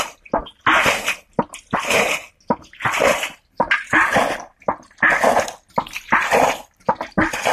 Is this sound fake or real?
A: real